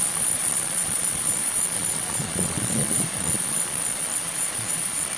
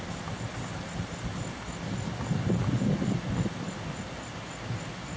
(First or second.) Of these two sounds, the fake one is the first